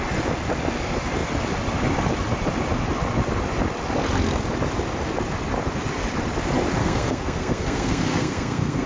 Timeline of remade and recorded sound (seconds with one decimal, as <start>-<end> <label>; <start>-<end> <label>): 0.0-6.8 recorded; 6.8-8.9 remade